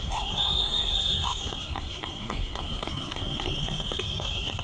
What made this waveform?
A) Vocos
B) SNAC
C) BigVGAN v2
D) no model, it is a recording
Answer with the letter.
B